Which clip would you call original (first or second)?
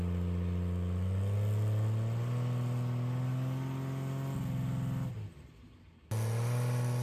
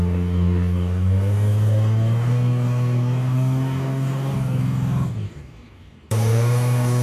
first